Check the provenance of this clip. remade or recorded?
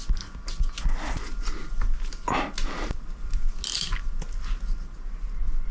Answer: recorded